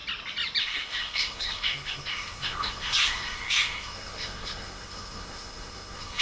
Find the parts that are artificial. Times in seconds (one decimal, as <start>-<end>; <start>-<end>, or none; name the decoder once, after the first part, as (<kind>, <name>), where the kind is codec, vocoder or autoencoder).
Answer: 0.6-6.2 (codec, SNAC)

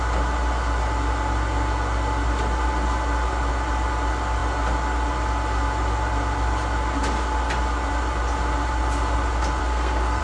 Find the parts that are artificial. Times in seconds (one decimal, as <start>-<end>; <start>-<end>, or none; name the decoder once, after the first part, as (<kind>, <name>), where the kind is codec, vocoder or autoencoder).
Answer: 9.6-10.2 (codec, SNAC)

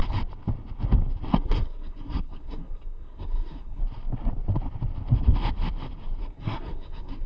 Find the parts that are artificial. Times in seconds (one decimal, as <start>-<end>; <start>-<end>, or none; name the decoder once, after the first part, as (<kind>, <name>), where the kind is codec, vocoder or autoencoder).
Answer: 1.3-3.8 (codec, SNAC); 6.2-7.3

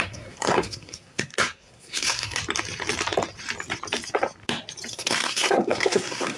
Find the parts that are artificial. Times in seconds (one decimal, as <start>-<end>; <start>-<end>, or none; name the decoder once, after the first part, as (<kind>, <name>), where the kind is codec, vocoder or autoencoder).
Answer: 0.0-2.4 (codec, SNAC); 4.9-6.4

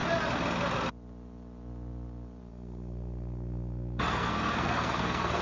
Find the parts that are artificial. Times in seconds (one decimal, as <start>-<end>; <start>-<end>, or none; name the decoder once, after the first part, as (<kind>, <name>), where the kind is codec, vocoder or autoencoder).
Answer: 2.5-5.4 (codec, SNAC)

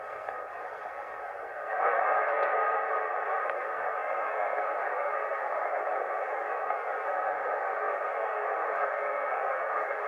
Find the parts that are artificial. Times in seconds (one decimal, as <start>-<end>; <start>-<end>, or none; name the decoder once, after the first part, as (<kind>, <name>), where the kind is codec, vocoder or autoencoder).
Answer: 0.0-10.1 (codec, SNAC)